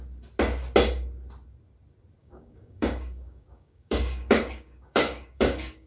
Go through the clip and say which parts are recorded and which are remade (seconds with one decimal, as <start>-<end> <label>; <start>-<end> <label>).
0.0-2.2 recorded; 2.2-5.9 remade